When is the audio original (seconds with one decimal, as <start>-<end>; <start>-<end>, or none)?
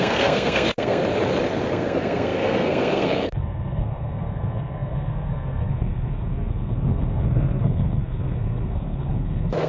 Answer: 1.0-1.7